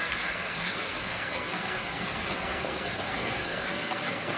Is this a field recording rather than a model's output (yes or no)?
no